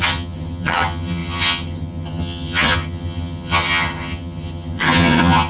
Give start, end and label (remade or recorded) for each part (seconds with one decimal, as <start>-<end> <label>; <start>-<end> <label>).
0.0-5.5 remade